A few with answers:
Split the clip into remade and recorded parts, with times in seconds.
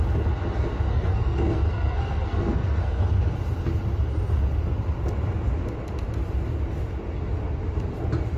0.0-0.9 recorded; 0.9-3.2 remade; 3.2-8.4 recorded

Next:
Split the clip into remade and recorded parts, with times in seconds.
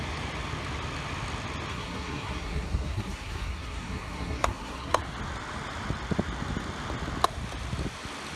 0.0-1.7 recorded; 1.7-5.0 remade; 5.0-8.4 recorded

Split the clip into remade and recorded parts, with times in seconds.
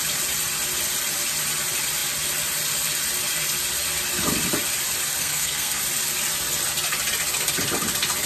0.0-5.2 recorded; 5.2-5.8 remade; 5.8-8.3 recorded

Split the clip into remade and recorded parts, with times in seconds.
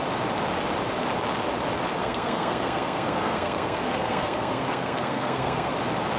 0.0-2.0 recorded; 2.0-5.7 remade; 5.7-6.2 recorded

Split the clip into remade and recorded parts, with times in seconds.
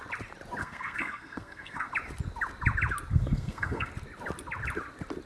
0.0-0.6 recorded; 0.6-1.9 remade; 1.9-3.1 recorded; 3.1-3.9 remade; 3.9-5.3 recorded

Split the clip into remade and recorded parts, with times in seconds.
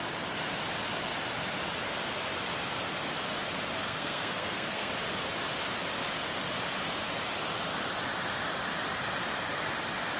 0.0-3.8 recorded; 3.8-4.9 remade; 4.9-10.2 recorded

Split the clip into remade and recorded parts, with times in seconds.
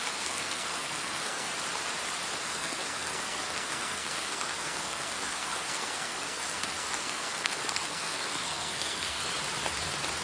0.0-1.5 remade; 1.5-2.4 recorded; 2.4-9.2 remade; 9.2-10.2 recorded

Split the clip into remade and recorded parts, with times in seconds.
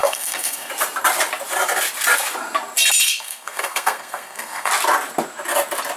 0.0-0.7 remade; 0.7-3.0 recorded; 3.0-4.7 remade; 4.7-6.0 recorded